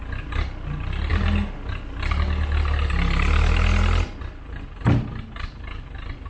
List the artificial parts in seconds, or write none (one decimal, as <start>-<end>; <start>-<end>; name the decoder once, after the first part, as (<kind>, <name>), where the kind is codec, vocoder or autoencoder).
none